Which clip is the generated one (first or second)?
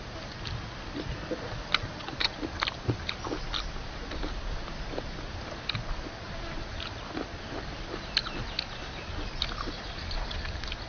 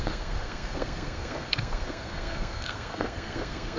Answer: second